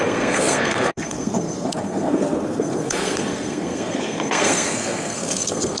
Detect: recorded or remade remade